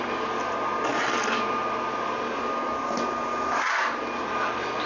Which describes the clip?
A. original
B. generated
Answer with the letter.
A